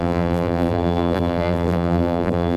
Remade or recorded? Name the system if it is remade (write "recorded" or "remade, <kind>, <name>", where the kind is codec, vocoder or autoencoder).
remade, vocoder, BigVGAN v2